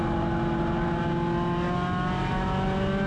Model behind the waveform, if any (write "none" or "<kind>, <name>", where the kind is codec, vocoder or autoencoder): none